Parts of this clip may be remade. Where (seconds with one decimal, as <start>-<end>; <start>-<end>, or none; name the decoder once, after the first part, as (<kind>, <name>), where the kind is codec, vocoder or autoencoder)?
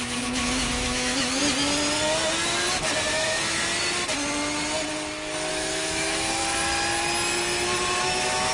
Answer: 0.0-1.4 (autoencoder, DAC-VAE); 3.1-3.7; 5.5-6.4; 8.0-8.5